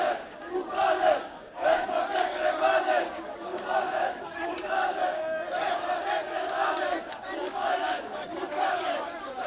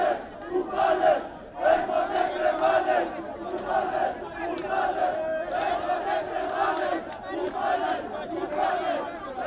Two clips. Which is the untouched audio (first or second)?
second